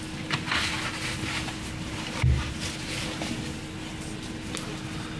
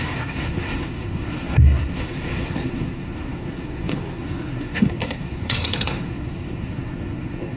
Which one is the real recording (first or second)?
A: first